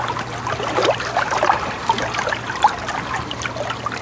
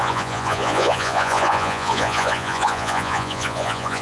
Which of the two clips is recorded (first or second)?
first